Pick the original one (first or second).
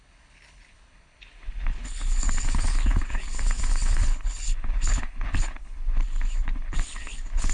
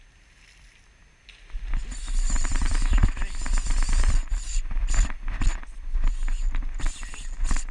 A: second